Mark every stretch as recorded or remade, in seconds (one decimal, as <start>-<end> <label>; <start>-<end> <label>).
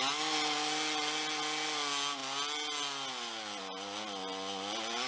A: 0.0-5.1 recorded